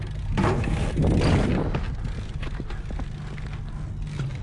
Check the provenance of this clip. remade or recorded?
recorded